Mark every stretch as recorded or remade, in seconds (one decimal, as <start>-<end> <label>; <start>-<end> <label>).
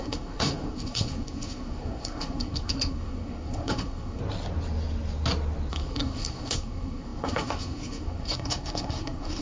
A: 0.0-4.2 remade; 4.2-5.7 recorded; 5.7-9.4 remade